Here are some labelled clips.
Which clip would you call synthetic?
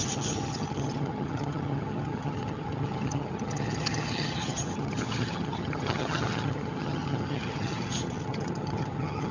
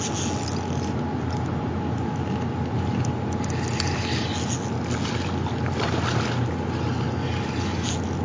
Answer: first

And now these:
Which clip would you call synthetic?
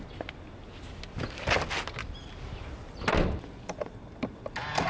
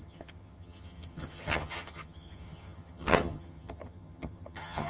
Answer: second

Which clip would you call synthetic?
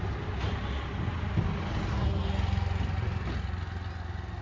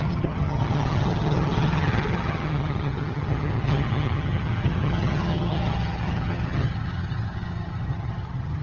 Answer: second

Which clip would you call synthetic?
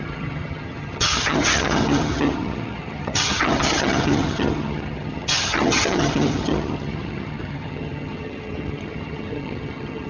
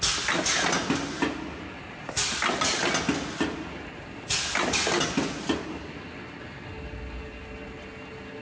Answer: first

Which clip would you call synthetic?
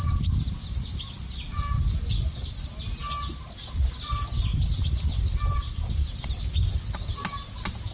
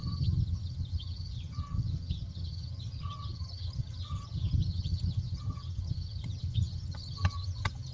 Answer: second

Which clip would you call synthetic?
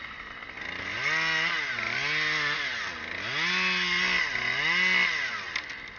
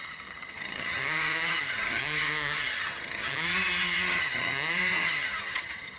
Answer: second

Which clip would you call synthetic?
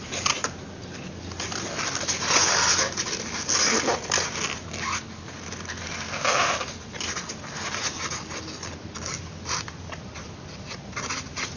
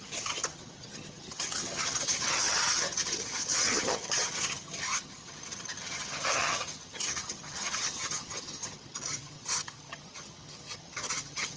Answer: second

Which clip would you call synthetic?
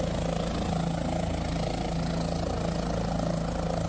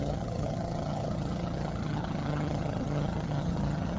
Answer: second